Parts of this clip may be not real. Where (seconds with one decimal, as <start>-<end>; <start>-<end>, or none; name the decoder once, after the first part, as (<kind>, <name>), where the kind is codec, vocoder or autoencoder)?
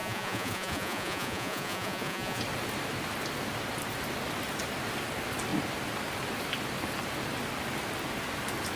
0.0-2.4 (vocoder, Vocos)